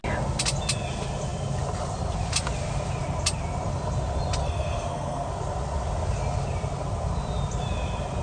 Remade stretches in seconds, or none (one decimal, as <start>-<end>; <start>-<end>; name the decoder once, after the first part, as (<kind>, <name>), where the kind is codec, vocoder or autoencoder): 4.4-5.3 (codec, SNAC)